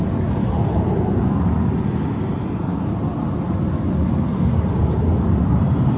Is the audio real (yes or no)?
yes